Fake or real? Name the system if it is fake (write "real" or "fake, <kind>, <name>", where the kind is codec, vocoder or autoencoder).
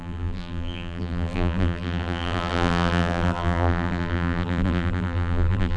fake, vocoder, BigVGAN v2